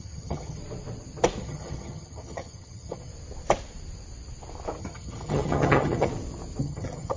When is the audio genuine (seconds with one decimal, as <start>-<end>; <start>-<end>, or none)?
0.6-1.4; 3.1-4.8; 6.1-6.6